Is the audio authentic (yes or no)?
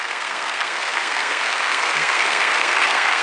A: no